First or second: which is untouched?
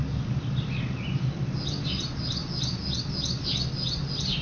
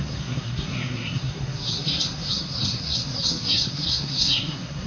first